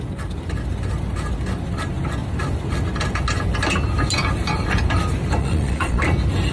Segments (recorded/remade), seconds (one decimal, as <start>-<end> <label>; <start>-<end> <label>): 0.0-5.4 recorded; 5.4-6.0 remade; 6.0-6.5 recorded